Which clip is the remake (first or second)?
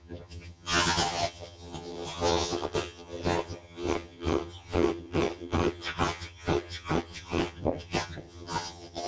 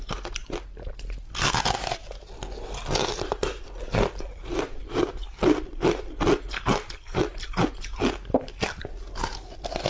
first